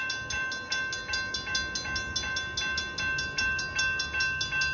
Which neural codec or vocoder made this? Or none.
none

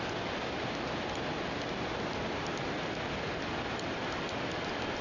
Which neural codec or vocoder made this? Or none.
none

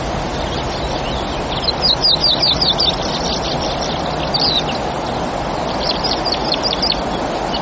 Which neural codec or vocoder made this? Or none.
none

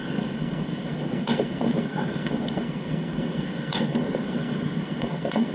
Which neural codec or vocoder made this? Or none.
codec, SNAC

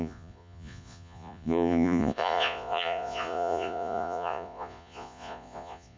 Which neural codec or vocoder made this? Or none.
vocoder, Vocos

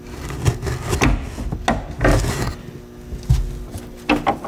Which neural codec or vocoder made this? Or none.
none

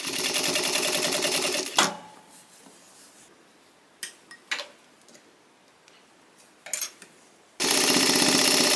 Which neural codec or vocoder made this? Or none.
none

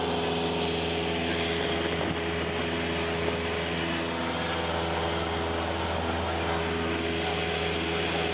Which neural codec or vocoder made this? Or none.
none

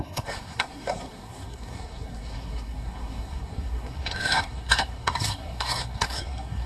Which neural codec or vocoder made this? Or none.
codec, SNAC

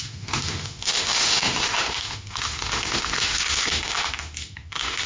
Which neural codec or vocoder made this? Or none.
autoencoder, DAC-VAE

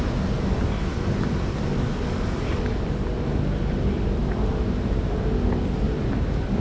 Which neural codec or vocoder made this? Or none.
none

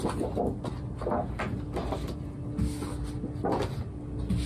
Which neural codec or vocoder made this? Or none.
none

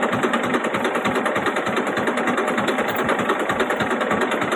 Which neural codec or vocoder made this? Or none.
none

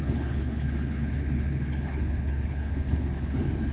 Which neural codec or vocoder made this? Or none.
codec, HILCodec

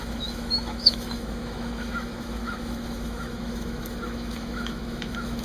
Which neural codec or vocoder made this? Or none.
autoencoder, DAC-VAE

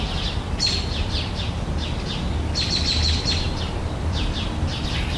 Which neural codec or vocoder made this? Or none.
none